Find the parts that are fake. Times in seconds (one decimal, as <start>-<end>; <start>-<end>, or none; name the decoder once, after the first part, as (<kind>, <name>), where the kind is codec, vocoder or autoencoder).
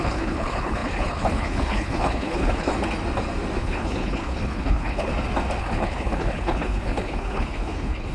0.0-2.7 (codec, HILCodec); 3.6-5.1; 5.6-8.1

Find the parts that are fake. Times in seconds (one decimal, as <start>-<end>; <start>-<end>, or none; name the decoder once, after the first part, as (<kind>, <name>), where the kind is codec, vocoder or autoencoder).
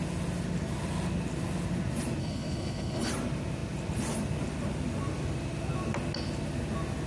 2.2-3.1 (codec, HILCodec)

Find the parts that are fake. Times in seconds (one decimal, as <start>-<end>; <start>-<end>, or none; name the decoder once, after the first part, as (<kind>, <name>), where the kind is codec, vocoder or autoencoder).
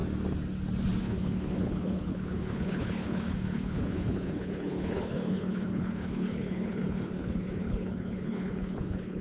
1.0-9.2 (codec, HILCodec)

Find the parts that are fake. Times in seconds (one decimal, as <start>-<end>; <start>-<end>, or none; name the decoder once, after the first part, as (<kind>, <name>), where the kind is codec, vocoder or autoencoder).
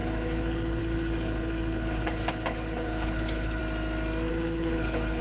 0.0-3.6 (codec, HILCodec); 4.3-5.2